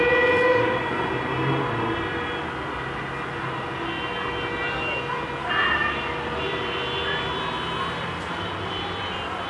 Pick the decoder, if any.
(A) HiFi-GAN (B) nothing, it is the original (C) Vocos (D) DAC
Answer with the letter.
B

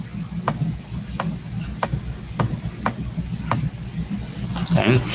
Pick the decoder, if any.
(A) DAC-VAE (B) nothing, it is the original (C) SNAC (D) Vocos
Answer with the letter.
B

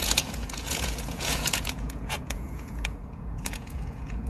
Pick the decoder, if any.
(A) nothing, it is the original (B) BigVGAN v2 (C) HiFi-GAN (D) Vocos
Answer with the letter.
D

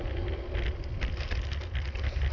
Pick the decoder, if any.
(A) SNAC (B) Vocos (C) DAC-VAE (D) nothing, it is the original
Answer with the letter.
D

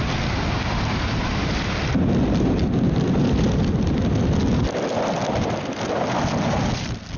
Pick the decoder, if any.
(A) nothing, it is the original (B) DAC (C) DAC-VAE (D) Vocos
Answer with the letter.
A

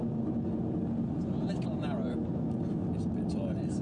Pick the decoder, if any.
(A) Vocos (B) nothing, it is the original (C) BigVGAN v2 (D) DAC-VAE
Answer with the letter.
B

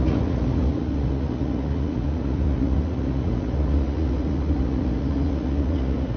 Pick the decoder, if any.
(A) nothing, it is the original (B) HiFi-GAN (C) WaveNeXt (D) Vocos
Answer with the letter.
D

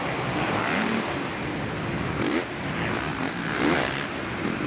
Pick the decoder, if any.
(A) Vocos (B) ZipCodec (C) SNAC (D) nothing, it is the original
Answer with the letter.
D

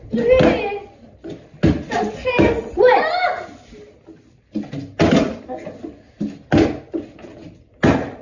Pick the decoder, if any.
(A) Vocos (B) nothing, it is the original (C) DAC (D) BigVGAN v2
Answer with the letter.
B